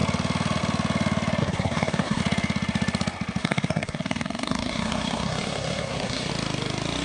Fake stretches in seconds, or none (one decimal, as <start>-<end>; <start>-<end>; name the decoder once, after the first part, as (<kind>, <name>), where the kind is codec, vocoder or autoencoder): 1.4-2.2 (codec, SNAC); 3.4-6.3